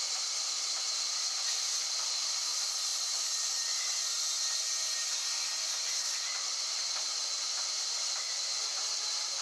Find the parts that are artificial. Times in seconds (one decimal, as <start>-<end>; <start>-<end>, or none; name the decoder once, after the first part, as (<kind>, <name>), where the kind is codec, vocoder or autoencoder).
none